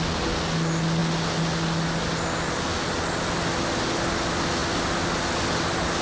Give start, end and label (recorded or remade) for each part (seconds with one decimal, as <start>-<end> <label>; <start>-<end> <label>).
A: 0.0-6.0 recorded